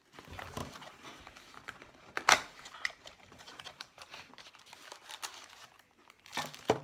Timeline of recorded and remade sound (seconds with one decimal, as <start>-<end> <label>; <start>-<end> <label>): 0.0-0.6 recorded; 0.6-4.3 remade; 4.3-6.3 recorded; 6.3-6.8 remade